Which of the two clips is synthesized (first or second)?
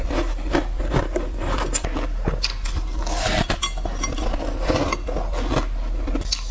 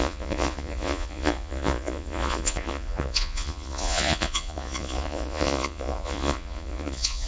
second